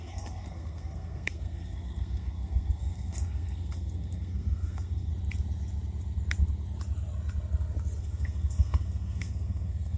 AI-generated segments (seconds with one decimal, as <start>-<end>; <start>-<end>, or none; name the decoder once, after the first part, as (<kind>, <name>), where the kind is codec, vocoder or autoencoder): 0.0-5.1 (codec, SNAC); 8.0-10.0